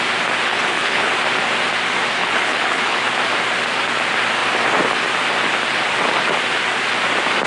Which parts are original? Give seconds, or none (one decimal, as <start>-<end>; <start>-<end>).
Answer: 0.0-0.5; 1.1-2.2; 3.0-7.5